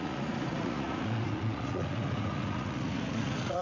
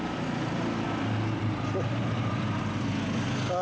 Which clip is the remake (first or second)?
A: first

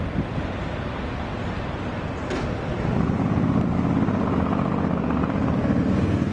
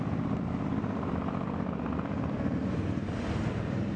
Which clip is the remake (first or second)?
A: second